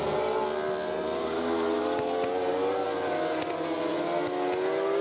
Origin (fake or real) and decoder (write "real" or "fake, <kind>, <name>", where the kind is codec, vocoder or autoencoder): real